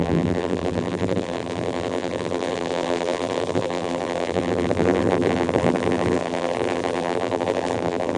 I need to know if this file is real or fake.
fake